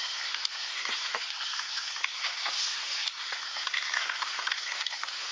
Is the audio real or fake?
fake